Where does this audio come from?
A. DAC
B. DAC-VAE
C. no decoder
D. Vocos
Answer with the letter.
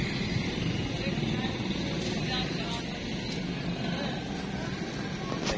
C